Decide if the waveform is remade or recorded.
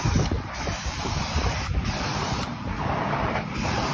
remade